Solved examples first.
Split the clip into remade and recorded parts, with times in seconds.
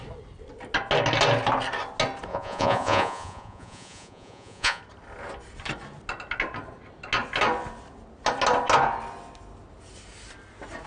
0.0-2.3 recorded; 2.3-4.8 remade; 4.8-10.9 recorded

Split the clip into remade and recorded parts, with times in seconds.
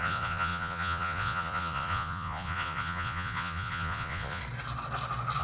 0.0-4.4 remade; 4.4-5.4 recorded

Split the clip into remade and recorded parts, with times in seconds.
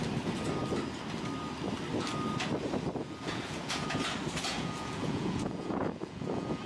0.0-3.0 recorded; 3.0-4.0 remade; 4.0-4.5 recorded; 4.5-6.7 remade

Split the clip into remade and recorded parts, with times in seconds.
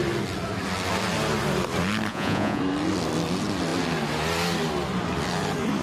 0.0-2.1 recorded; 2.1-2.6 remade; 2.6-5.8 recorded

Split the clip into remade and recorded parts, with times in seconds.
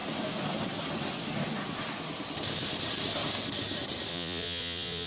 0.0-4.1 recorded; 4.1-5.1 remade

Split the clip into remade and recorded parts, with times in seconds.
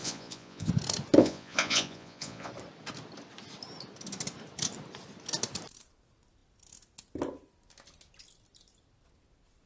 0.0-0.7 remade; 0.7-1.2 recorded; 1.2-2.5 remade; 2.5-9.7 recorded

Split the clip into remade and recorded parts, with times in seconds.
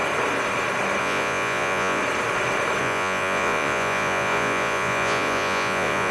0.0-1.0 recorded; 1.0-2.0 remade; 2.0-2.8 recorded; 2.8-6.1 remade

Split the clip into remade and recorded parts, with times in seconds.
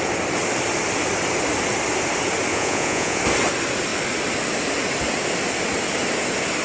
0.0-2.5 recorded; 2.5-3.2 remade; 3.2-6.6 recorded